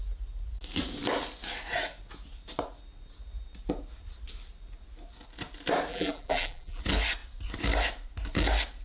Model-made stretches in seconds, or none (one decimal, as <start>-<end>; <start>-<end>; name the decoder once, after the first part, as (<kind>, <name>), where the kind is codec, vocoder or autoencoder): 5.9-6.8 (vocoder, BigVGAN v2)